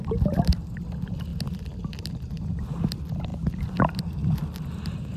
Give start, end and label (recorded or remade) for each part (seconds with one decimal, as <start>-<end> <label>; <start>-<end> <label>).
0.0-5.2 recorded